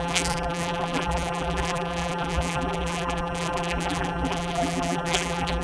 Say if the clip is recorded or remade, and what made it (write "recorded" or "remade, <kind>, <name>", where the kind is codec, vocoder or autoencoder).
remade, vocoder, BigVGAN v2